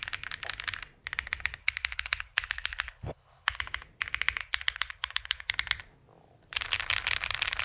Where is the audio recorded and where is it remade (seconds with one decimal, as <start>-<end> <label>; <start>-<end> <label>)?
0.0-1.6 recorded; 1.6-3.6 remade; 3.6-4.4 recorded; 4.4-5.5 remade; 5.5-7.6 recorded